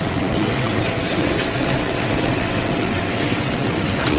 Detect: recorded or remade remade